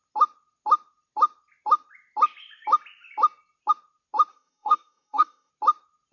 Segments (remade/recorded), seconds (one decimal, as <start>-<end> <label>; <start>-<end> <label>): 0.0-4.3 recorded; 4.3-5.5 remade; 5.5-6.1 recorded